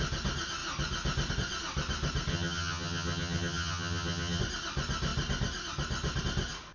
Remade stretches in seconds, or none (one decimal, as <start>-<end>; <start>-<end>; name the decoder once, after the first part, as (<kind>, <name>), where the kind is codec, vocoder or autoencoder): 2.3-4.4 (vocoder, HiFi-GAN)